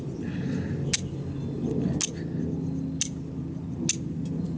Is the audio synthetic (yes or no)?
no